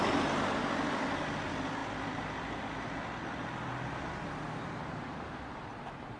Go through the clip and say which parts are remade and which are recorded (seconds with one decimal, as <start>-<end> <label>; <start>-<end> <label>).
0.0-6.2 recorded